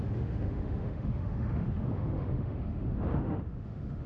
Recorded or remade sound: remade